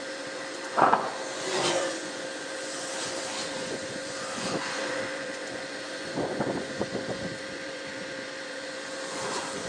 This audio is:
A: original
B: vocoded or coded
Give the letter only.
B